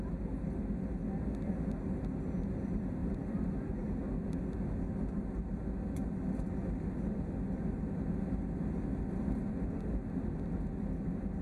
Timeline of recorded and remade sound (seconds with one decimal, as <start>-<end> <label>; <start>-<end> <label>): 0.0-3.0 recorded; 3.0-3.5 remade; 3.5-11.4 recorded